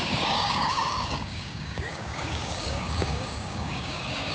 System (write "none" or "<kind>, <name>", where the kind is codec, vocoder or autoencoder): codec, DAC